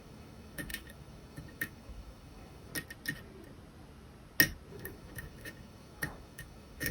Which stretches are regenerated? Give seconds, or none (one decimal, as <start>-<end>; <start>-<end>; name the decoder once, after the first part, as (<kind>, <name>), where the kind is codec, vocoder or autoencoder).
0.0-2.7 (autoencoder, DAC-VAE); 4.7-6.9